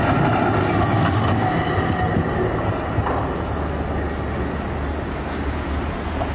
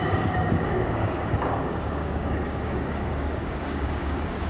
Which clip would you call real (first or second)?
first